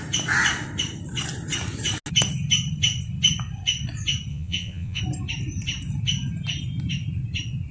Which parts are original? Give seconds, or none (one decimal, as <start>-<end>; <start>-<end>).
0.0-4.3; 5.0-7.7